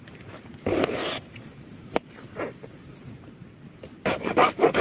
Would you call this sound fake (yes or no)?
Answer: yes